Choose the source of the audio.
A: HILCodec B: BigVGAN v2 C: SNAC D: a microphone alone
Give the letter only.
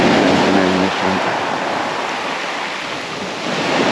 D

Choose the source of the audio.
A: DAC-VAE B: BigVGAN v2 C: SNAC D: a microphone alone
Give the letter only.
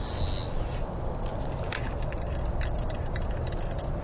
D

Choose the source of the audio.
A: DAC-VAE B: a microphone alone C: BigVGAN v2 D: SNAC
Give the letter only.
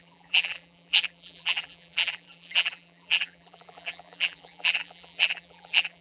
C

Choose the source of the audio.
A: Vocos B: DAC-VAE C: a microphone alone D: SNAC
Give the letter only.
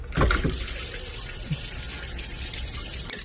C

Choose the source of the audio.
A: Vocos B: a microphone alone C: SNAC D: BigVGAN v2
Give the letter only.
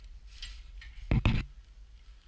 B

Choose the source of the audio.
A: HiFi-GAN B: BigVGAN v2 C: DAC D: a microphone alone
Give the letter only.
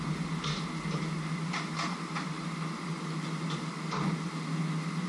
D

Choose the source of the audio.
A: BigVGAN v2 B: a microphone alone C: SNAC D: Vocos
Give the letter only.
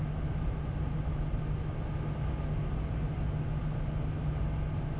B